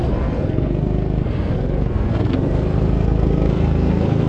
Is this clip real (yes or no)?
no